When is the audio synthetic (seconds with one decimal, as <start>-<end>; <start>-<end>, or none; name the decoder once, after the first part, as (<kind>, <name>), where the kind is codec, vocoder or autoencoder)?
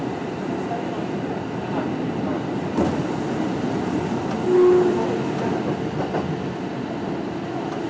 none